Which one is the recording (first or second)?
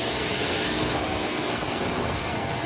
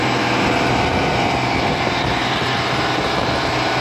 second